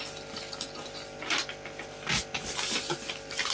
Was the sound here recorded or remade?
recorded